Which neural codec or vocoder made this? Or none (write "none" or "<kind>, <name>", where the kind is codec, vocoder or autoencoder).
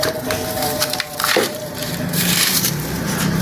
vocoder, BigVGAN v2